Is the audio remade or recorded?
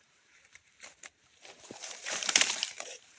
remade